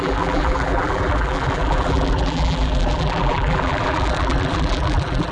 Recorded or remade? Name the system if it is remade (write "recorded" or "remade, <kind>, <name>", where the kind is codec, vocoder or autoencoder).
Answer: remade, vocoder, BigVGAN v2